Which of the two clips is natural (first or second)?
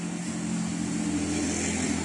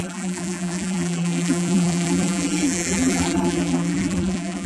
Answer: first